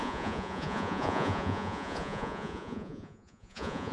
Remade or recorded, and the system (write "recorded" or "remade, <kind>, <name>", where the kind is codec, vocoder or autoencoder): remade, vocoder, Vocos